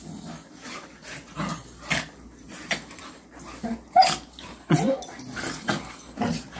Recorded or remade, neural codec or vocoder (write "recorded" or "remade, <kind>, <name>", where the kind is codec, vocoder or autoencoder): recorded